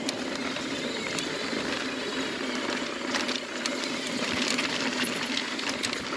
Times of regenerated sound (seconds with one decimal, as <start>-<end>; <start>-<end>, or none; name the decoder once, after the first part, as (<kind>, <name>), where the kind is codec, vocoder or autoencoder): 0.0-6.2 (vocoder, BigVGAN v2)